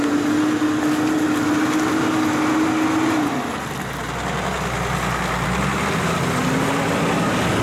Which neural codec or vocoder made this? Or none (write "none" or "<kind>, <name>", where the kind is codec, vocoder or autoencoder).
none